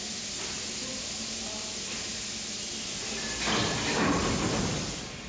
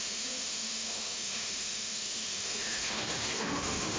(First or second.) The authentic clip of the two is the first